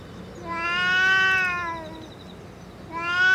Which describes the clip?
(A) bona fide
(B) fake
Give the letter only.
A